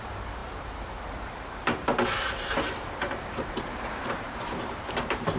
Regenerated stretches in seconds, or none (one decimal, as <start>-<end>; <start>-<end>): 0.0-5.4